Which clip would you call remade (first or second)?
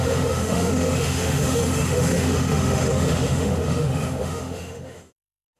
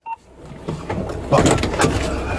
first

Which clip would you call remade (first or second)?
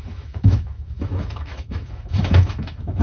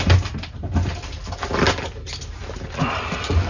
first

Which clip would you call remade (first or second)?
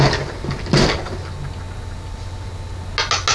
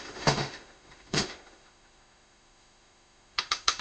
second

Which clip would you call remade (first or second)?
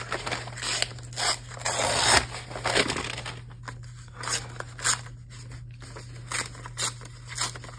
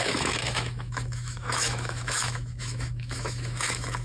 second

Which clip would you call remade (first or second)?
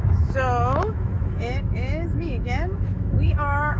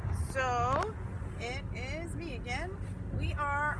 first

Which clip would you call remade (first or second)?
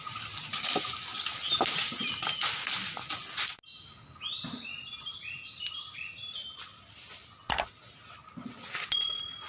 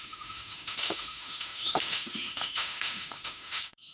second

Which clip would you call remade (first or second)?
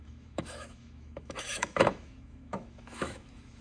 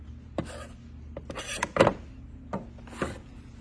first